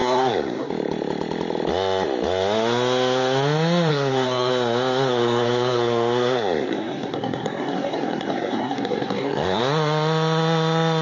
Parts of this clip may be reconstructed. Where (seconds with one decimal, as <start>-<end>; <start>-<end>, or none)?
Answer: 0.0-0.7; 3.9-4.5; 5.1-9.6